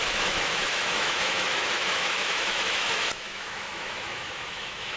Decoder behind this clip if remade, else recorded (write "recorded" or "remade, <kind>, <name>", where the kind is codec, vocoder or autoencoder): remade, autoencoder, DAC-VAE